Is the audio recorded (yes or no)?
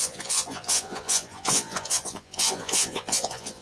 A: no